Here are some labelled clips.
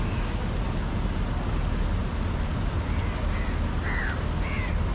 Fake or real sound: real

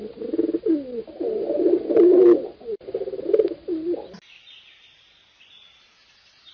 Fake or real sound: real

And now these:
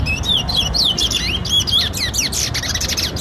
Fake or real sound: real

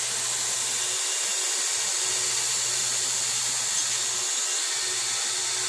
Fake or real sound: real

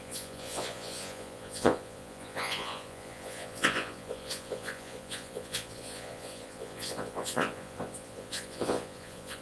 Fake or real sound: fake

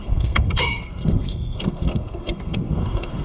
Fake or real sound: fake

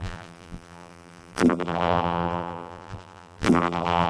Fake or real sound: fake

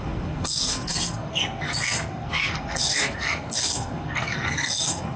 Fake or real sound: fake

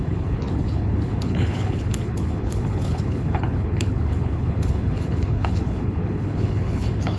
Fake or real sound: fake